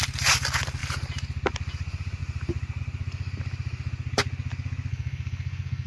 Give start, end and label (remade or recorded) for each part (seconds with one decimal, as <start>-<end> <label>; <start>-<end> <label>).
0.0-4.9 recorded; 4.9-5.9 remade

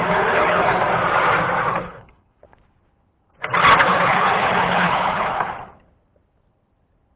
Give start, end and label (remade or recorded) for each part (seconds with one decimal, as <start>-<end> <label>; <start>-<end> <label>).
0.0-0.8 remade; 0.8-1.7 recorded; 1.7-2.4 remade; 2.4-3.9 recorded; 3.9-5.5 remade; 5.5-7.2 recorded

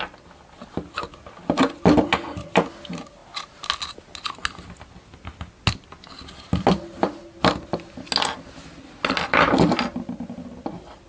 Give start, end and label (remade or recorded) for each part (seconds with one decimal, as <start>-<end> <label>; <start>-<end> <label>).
0.0-11.1 recorded